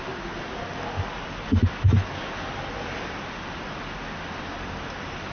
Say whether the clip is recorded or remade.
recorded